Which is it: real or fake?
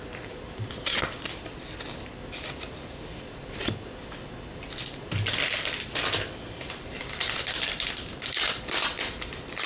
real